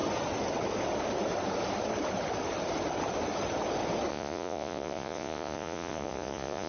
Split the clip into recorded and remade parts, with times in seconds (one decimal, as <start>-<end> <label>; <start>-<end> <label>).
0.0-4.1 recorded; 4.1-6.7 remade